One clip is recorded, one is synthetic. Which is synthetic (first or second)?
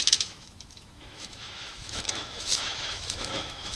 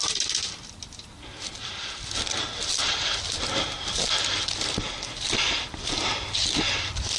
first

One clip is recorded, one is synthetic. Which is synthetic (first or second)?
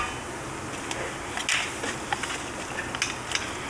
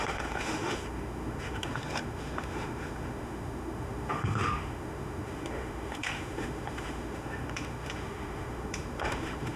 second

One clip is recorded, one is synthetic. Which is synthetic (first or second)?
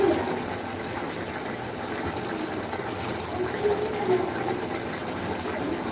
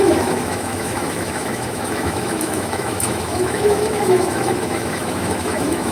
second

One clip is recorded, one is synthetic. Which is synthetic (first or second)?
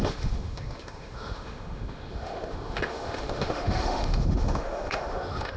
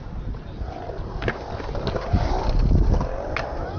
first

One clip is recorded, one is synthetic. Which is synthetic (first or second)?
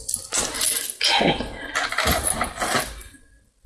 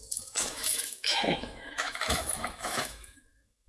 second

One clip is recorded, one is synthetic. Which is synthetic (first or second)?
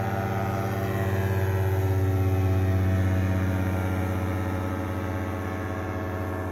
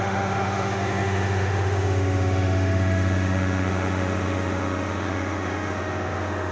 second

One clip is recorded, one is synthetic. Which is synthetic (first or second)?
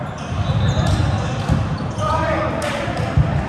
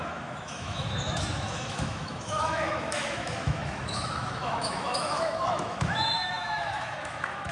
second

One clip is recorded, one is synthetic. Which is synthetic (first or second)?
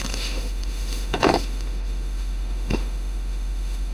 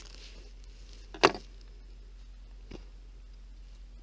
first